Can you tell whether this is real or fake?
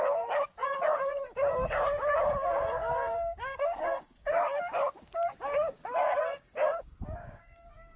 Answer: fake